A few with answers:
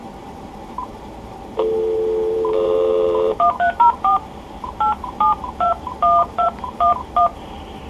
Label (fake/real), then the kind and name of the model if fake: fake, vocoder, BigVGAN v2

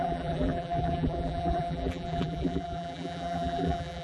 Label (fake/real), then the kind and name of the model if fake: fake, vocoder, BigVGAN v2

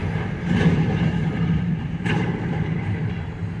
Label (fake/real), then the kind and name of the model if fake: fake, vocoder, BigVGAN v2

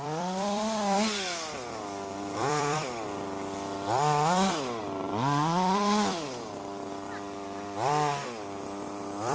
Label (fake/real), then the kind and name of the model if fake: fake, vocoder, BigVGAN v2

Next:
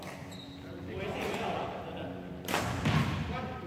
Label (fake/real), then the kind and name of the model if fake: real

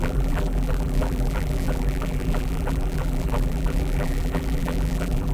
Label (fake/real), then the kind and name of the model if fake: fake, vocoder, BigVGAN v2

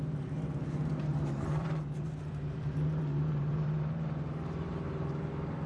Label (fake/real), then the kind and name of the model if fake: fake, vocoder, BigVGAN v2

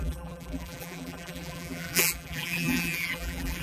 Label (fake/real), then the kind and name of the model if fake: fake, vocoder, BigVGAN v2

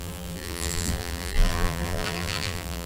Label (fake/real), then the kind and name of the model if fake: fake, vocoder, BigVGAN v2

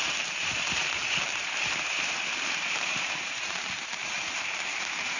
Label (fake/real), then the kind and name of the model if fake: fake, vocoder, BigVGAN v2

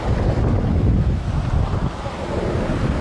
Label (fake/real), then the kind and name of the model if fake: real